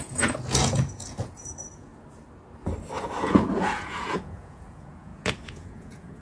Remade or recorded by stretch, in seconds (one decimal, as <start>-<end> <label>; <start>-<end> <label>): 0.0-1.9 remade; 1.9-3.2 recorded; 3.2-6.2 remade